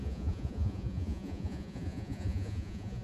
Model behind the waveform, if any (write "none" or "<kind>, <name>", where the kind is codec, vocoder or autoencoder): vocoder, Vocos